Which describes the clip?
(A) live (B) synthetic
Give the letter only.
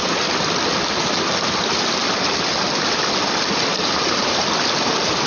A